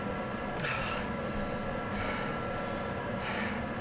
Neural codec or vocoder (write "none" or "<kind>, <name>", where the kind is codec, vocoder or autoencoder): none